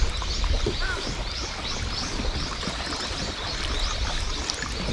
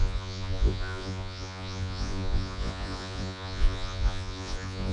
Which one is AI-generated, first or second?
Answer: second